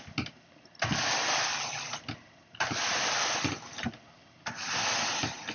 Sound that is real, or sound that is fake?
real